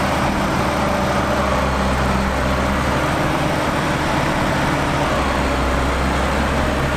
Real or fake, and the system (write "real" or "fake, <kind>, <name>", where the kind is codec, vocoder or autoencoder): real